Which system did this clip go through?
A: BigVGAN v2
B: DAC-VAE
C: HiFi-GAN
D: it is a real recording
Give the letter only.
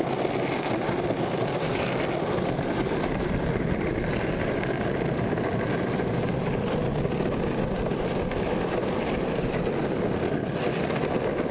D